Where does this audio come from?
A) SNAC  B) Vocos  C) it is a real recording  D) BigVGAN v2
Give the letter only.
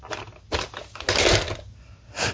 C